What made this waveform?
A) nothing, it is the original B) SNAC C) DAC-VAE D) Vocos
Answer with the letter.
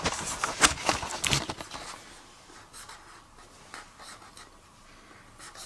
A